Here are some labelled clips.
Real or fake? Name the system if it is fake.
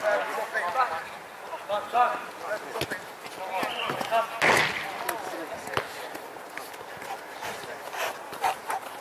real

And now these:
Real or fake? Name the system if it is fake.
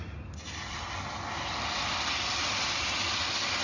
real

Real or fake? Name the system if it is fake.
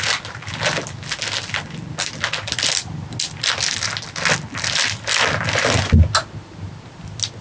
real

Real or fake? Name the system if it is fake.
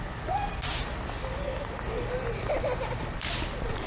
real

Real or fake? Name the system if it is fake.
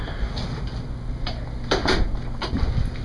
real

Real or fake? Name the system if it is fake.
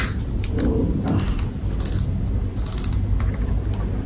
real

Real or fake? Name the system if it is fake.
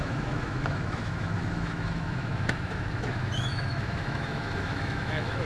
fake, autoencoder, DAC-VAE